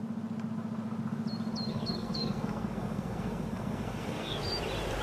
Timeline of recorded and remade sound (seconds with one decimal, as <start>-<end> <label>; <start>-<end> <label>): 0.0-1.7 recorded; 1.7-4.4 remade; 4.4-5.0 recorded